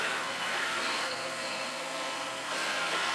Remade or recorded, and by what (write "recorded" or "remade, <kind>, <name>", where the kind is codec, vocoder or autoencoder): remade, codec, SNAC